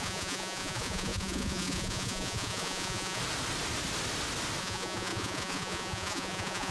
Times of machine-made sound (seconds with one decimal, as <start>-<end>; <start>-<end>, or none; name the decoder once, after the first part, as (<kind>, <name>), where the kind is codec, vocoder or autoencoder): 0.0-3.2 (vocoder, Vocos); 4.6-6.7